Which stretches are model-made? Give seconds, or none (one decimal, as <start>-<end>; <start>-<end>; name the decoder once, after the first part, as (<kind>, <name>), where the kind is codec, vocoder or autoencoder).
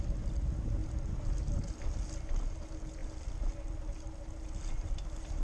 none